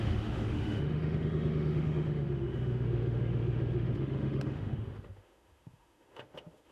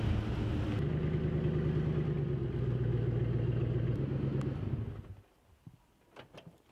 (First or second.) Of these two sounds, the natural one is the second